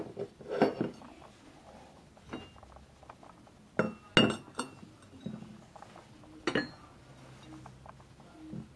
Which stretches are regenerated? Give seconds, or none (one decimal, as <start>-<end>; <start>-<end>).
none